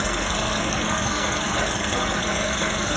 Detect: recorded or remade remade